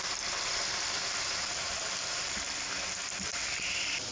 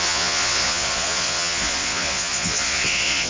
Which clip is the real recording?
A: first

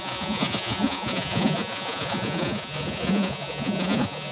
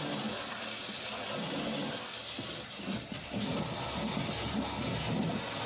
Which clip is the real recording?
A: second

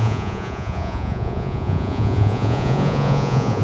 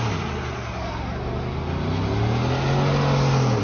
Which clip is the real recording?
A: second